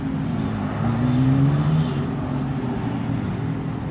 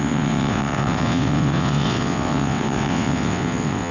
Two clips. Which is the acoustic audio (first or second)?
first